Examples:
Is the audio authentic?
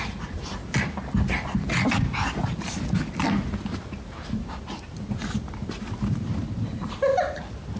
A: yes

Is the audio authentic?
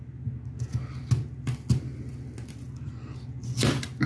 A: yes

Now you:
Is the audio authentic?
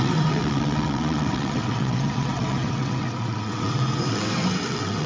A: no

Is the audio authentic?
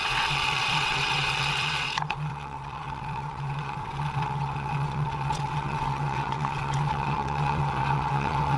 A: no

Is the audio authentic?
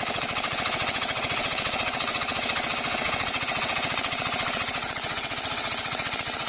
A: no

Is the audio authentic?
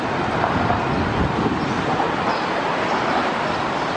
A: yes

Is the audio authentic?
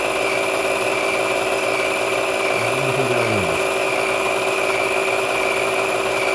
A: yes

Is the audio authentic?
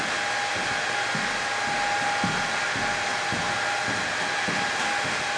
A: yes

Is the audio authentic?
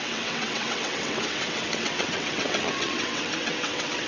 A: no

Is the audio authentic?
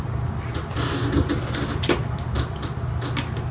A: yes